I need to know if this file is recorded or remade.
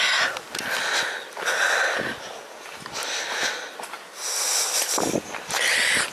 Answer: recorded